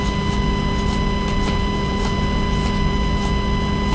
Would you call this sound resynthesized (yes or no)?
no